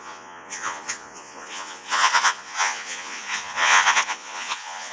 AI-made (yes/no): yes